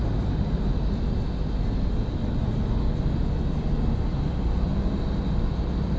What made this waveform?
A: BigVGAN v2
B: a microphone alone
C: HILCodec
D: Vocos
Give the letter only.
B